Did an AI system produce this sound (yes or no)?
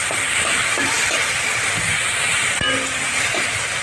yes